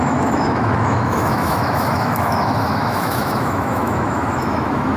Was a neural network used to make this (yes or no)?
yes